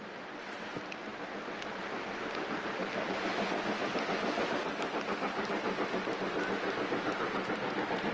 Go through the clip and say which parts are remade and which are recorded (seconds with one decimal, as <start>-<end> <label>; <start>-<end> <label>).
0.0-8.1 recorded